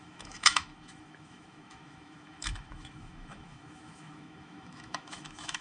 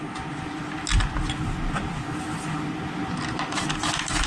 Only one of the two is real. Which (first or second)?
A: second